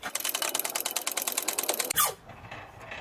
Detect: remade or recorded recorded